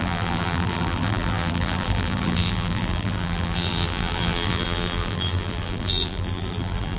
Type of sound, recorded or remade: remade